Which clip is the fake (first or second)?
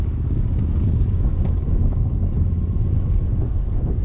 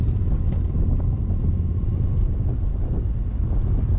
first